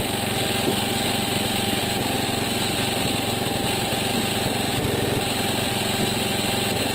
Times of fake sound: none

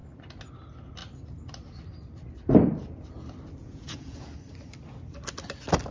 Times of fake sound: 3.6-4.3 (vocoder, Vocos)

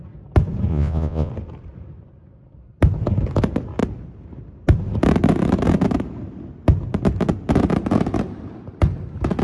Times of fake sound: 0.7-1.3 (vocoder, Vocos)